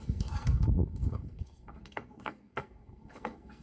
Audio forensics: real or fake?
fake